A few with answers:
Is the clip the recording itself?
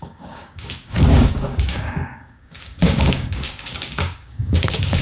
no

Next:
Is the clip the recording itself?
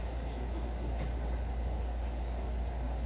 no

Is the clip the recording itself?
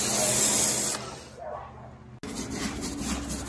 yes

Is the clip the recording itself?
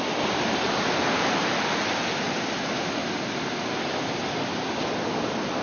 yes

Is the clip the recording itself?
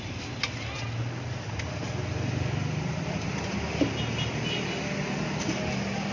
yes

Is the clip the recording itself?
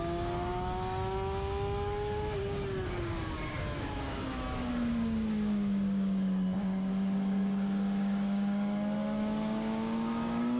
no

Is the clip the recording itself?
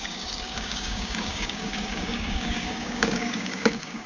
no